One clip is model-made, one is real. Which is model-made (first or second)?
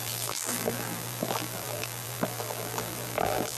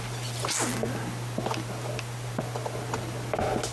first